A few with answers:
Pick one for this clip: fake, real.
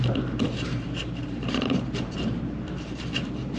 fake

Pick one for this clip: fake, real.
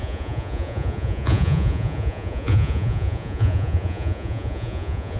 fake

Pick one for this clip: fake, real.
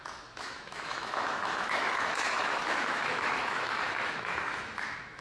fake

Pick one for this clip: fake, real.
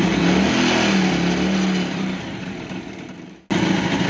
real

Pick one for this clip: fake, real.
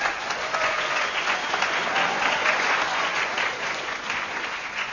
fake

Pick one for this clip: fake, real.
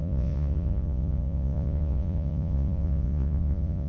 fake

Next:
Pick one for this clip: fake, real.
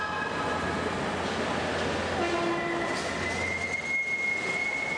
real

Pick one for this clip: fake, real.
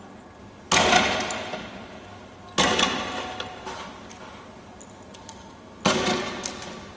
real